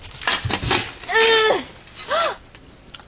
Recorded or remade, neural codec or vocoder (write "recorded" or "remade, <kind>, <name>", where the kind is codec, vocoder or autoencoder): recorded